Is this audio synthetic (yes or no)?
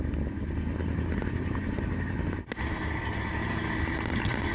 no